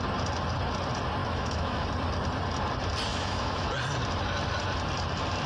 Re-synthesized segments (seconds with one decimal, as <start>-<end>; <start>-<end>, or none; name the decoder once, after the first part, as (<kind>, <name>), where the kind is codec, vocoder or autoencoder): 1.2-1.8 (autoencoder, DAC-VAE); 3.1-3.7